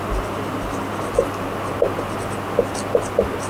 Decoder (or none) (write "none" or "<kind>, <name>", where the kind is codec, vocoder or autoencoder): none